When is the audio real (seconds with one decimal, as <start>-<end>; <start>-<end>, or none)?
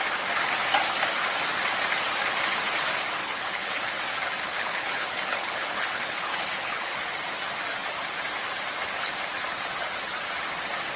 0.0-3.2; 4.0-4.4; 7.0-11.0